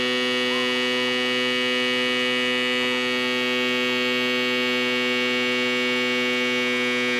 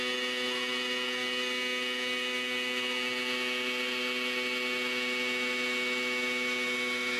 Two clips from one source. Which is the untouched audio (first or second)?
first